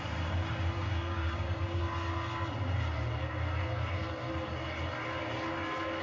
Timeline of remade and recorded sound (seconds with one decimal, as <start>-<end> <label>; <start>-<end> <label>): 0.0-0.8 recorded; 0.8-1.8 remade; 1.8-6.0 recorded